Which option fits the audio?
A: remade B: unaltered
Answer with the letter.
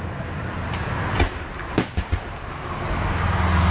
B